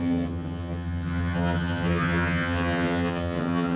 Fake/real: fake